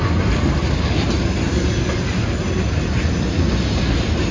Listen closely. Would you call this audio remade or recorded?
recorded